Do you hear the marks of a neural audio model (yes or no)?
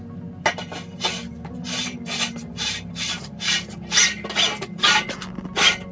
no